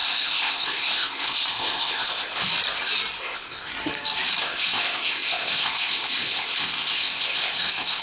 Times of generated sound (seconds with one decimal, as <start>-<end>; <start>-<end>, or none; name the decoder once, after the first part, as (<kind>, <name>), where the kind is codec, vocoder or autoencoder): 0.0-2.5 (codec, ZipCodec); 3.2-3.7; 4.4-8.0